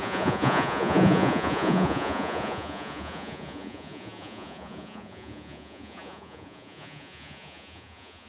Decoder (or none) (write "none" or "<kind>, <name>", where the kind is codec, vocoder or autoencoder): vocoder, Vocos